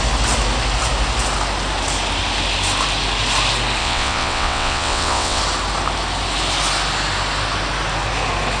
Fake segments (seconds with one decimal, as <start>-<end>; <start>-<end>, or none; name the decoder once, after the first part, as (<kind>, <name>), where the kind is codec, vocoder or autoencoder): 3.8-5.4 (vocoder, WaveNeXt)